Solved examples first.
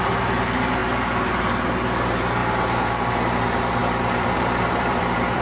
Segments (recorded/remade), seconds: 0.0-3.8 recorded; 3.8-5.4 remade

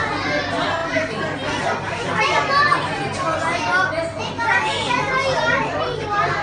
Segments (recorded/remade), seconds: 0.0-6.4 recorded

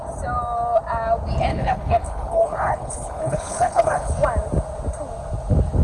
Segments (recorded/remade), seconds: 0.0-1.5 recorded; 1.5-4.1 remade; 4.1-5.8 recorded